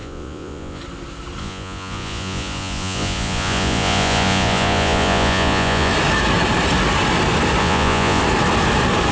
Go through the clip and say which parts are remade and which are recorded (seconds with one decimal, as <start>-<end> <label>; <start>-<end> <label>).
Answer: 0.0-0.8 remade; 0.8-1.4 recorded; 1.4-5.9 remade; 5.9-7.6 recorded; 7.6-8.2 remade; 8.2-9.1 recorded